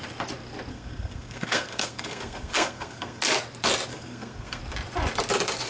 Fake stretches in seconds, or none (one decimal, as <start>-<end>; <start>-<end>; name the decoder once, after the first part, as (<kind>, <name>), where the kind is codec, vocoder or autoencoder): 0.7-3.2 (codec, SNAC); 3.9-4.6